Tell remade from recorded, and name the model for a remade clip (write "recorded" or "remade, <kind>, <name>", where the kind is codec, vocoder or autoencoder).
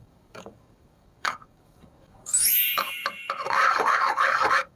remade, codec, DAC